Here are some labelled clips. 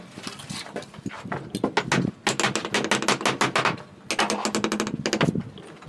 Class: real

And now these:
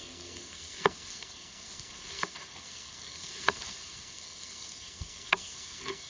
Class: fake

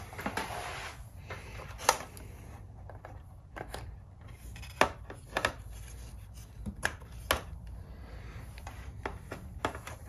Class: real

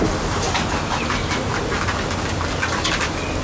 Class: real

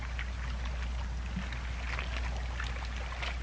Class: real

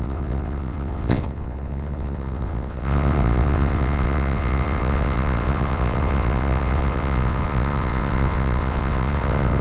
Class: fake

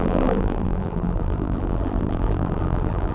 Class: fake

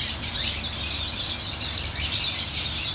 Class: fake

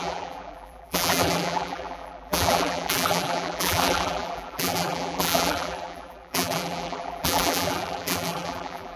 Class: fake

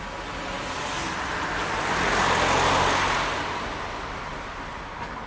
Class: real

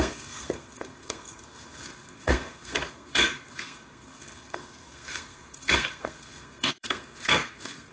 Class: fake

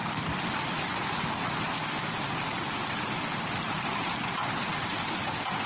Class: real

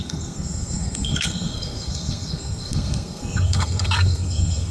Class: fake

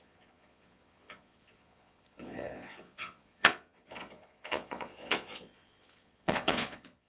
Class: fake